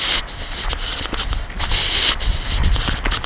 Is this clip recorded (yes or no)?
yes